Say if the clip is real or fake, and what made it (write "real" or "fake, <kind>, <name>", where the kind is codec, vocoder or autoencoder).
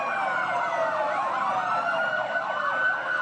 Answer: fake, vocoder, BigVGAN v2